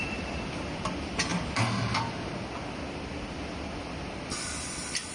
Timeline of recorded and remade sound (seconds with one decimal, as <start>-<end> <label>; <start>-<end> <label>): 0.0-5.1 recorded